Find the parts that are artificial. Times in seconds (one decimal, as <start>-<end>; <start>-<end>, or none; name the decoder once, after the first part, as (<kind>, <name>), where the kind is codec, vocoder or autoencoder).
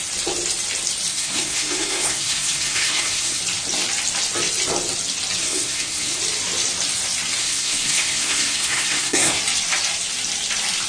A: 1.1-3.4 (codec, SNAC); 5.4-6.2; 7.4-9.4